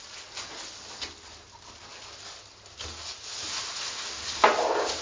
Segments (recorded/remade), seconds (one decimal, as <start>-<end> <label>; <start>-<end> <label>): 0.0-5.0 recorded